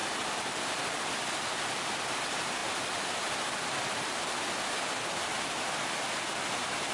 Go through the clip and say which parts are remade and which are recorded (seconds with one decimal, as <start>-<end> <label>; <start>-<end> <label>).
0.0-1.1 remade; 1.1-6.9 recorded